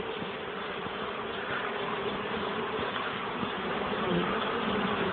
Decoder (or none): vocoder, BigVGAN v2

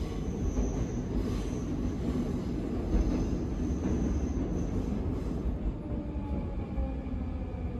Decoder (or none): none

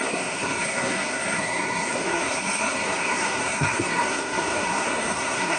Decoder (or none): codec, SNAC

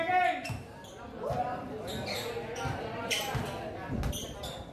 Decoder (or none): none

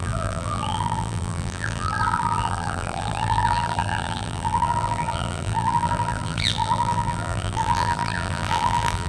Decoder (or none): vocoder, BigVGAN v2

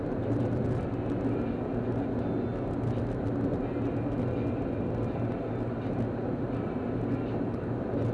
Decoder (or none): none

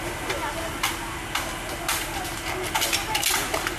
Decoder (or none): none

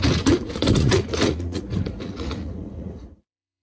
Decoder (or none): vocoder, Vocos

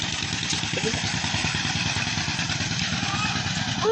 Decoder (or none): none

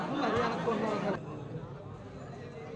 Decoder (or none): none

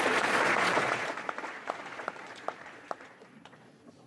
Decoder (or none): vocoder, Vocos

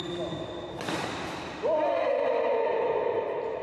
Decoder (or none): none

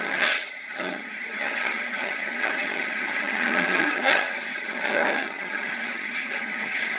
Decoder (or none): vocoder, HiFi-GAN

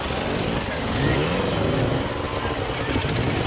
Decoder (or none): none